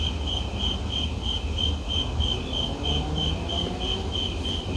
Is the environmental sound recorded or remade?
recorded